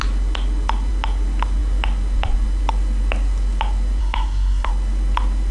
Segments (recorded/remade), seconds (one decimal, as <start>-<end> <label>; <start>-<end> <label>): 0.0-4.0 recorded; 4.0-4.7 remade; 4.7-5.5 recorded

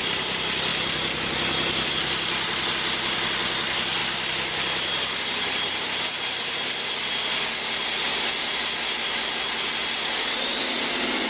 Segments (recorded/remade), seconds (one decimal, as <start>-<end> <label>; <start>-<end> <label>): 0.0-11.3 recorded

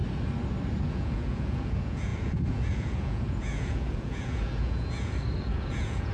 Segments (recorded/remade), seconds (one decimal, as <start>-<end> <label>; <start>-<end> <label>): 0.0-0.8 recorded; 0.8-6.1 remade

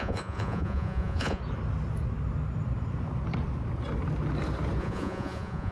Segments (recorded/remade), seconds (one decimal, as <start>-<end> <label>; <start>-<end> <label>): 0.0-1.4 remade; 1.4-4.8 recorded; 4.8-5.7 remade

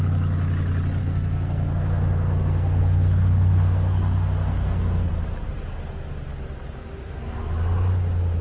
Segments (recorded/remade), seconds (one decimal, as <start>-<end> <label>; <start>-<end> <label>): 0.0-1.0 recorded; 1.0-5.1 remade; 5.1-8.4 recorded

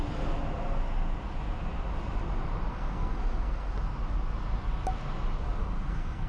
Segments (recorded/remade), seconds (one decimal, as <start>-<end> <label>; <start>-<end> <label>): 0.0-2.7 recorded; 2.7-3.7 remade; 3.7-5.6 recorded; 5.6-6.3 remade

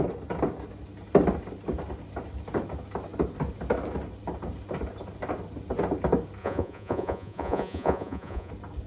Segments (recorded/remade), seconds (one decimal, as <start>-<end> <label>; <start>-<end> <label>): 0.0-6.4 recorded; 6.4-8.5 remade; 8.5-8.9 recorded